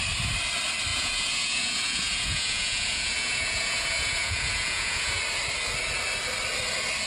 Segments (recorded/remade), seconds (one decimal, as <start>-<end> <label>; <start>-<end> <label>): 0.0-0.9 recorded; 0.9-5.2 remade; 5.2-7.1 recorded